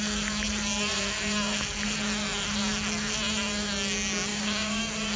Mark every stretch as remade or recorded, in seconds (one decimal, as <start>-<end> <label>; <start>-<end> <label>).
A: 0.0-4.3 recorded; 4.3-4.8 remade; 4.8-5.2 recorded